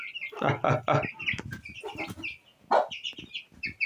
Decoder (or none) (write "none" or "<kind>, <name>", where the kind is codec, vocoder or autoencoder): none